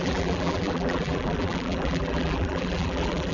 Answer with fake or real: fake